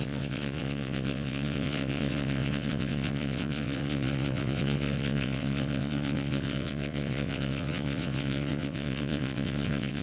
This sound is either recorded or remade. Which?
remade